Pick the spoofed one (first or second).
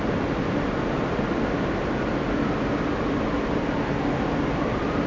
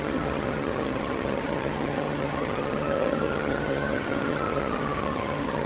second